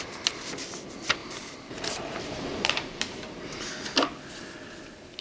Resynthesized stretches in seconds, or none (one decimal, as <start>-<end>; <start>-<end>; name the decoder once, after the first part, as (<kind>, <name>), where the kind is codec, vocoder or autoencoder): 1.2-3.7 (vocoder, BigVGAN v2)